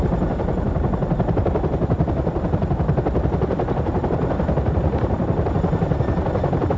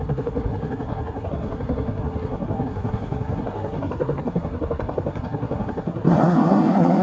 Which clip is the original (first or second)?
first